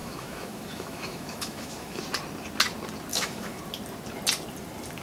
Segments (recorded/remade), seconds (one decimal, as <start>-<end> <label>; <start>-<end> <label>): 0.0-2.0 remade; 2.0-3.1 recorded; 3.1-3.6 remade; 3.6-5.0 recorded